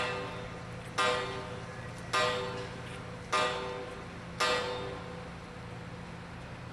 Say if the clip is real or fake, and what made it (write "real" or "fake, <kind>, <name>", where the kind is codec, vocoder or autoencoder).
real